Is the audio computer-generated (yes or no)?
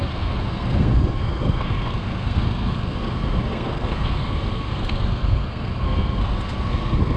yes